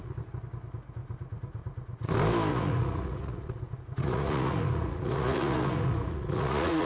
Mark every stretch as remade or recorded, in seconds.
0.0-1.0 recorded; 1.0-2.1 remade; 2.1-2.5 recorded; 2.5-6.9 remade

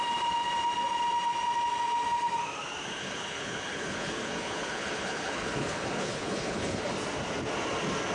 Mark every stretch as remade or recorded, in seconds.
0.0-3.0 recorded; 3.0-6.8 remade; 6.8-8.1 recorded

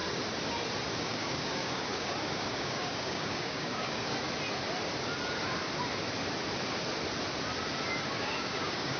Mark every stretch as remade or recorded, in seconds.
0.0-1.0 recorded; 1.0-4.1 remade; 4.1-8.0 recorded; 8.0-9.0 remade

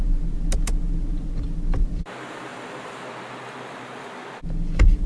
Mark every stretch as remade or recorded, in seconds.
0.0-2.5 recorded; 2.5-3.1 remade; 3.1-5.1 recorded

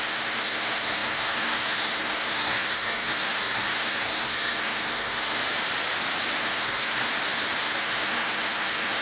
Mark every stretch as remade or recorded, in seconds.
0.0-5.4 remade; 5.4-6.4 recorded; 6.4-7.1 remade; 7.1-7.6 recorded; 7.6-9.0 remade